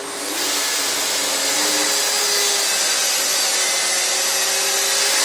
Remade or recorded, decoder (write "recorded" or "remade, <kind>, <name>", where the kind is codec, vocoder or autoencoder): recorded